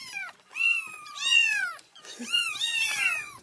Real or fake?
fake